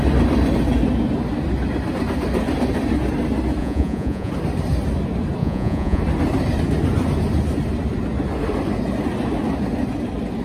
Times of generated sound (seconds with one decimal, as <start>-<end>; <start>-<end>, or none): 3.6-4.3; 5.4-6.0